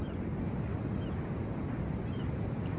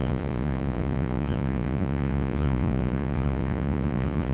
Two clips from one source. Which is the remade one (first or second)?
second